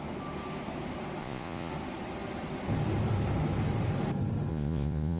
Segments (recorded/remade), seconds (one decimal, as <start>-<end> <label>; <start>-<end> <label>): 0.0-1.2 recorded; 1.2-1.7 remade; 1.7-4.5 recorded; 4.5-5.2 remade